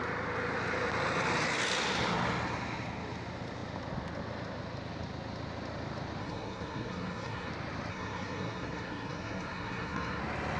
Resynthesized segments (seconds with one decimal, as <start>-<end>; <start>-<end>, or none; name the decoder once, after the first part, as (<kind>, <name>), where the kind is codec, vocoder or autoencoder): 6.2-7.5 (codec, SNAC); 7.9-10.2